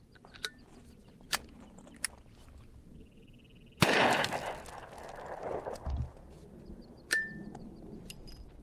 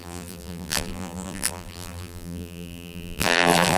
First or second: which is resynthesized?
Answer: second